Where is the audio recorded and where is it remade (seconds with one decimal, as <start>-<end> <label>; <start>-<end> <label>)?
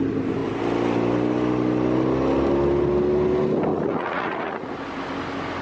0.0-3.7 recorded; 3.7-4.7 remade; 4.7-5.6 recorded